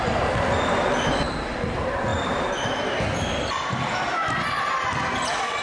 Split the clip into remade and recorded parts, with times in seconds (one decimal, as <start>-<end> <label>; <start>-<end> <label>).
0.0-5.6 recorded